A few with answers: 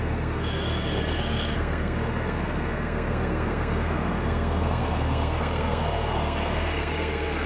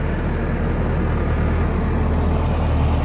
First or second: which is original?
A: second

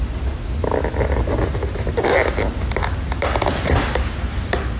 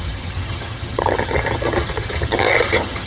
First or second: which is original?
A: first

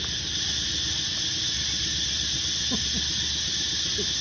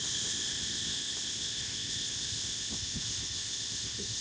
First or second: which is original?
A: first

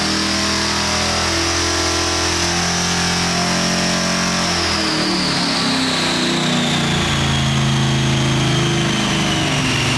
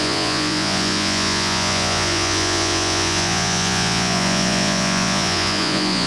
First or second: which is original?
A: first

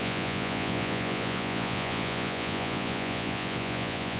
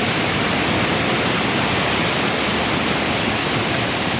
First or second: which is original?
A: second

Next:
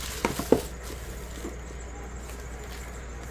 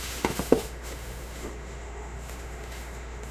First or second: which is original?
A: first